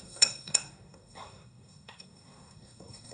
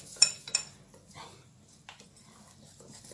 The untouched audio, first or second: second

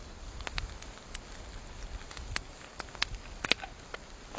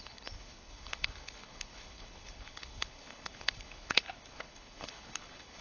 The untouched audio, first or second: first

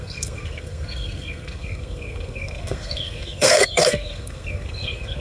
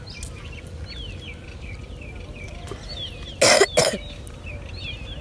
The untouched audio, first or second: second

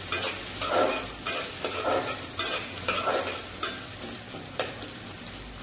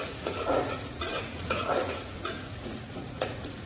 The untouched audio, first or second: first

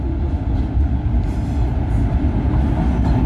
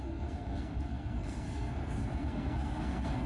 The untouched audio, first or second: first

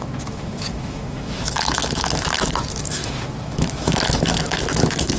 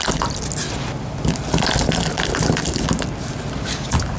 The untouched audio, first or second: second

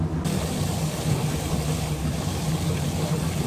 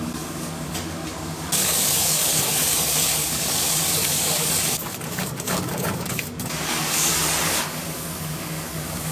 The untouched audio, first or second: first